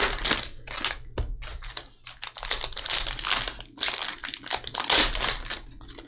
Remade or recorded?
recorded